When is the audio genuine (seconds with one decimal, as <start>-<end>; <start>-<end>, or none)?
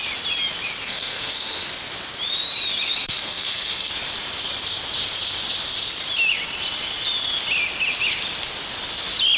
0.0-0.8; 1.7-3.0; 3.9-9.4